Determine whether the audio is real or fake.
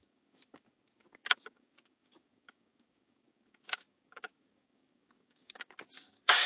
fake